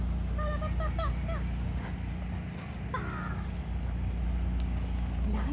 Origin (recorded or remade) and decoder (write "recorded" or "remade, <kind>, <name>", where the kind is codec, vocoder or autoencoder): recorded